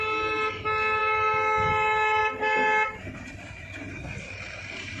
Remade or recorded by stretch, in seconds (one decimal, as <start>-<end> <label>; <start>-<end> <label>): 0.0-5.0 recorded